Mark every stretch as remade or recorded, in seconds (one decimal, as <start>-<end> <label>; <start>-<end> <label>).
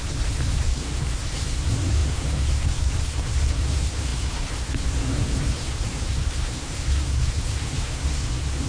0.0-8.7 remade